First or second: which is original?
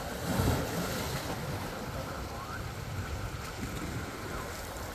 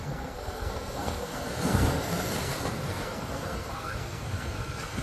first